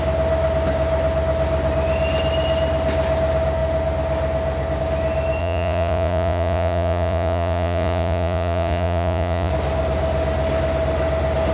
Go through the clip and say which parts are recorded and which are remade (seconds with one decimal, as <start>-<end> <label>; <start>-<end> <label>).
0.0-5.4 recorded; 5.4-9.5 remade; 9.5-11.5 recorded